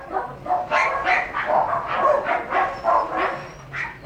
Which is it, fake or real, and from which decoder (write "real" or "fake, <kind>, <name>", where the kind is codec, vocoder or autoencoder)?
fake, vocoder, BigVGAN v2